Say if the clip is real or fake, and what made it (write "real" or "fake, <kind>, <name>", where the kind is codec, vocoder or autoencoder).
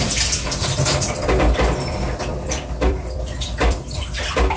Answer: fake, vocoder, BigVGAN v2